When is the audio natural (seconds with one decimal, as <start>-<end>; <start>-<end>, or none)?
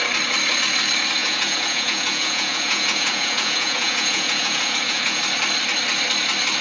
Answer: 0.0-1.2; 5.2-6.6